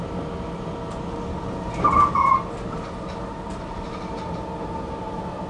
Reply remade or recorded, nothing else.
recorded